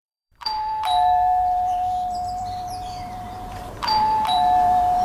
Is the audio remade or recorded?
remade